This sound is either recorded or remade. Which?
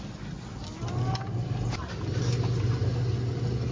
recorded